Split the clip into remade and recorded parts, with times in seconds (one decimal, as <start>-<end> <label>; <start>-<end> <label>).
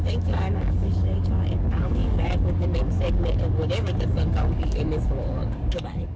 0.0-6.2 remade